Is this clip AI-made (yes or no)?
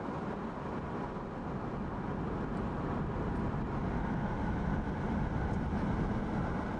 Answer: no